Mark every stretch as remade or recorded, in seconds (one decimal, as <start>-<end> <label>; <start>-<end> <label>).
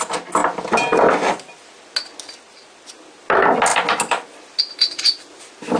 0.0-5.8 recorded